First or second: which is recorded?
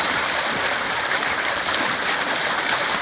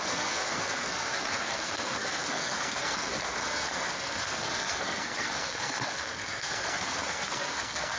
first